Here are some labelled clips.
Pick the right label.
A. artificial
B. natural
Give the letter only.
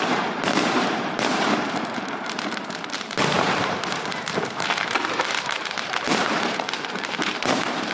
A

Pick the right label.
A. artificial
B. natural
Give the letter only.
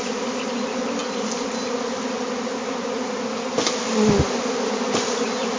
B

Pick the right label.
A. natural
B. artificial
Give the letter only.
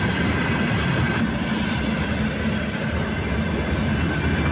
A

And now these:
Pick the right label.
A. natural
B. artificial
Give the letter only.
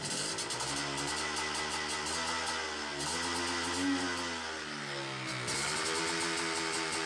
A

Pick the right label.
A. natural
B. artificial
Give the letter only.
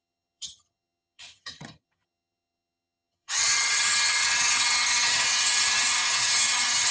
B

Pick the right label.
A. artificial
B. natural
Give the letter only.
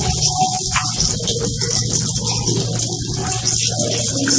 B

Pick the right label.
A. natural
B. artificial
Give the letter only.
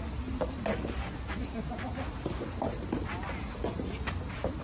A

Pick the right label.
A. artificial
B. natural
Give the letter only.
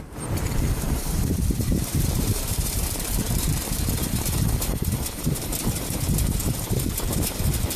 A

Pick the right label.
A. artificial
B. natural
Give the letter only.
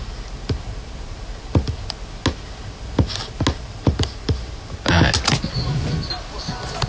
B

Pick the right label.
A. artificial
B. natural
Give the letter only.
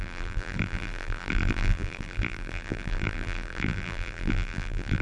A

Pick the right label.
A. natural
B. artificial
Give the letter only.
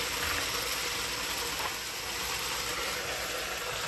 A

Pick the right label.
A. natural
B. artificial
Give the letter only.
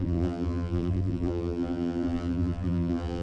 B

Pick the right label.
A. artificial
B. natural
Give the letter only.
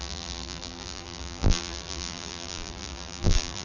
A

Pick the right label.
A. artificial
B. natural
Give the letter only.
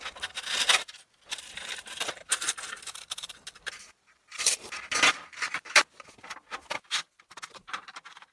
B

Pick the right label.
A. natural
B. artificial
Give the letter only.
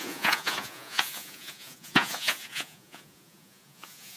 B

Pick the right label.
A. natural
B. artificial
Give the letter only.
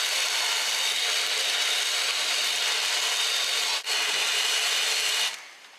A